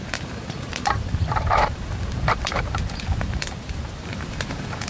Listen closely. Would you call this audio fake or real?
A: fake